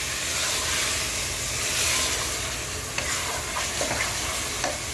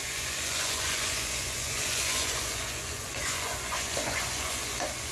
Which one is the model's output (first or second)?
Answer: second